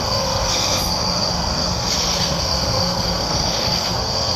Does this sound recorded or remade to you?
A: remade